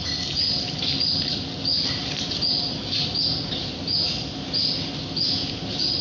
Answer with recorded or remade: recorded